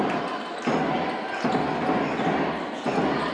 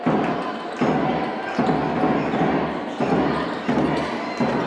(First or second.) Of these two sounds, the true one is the second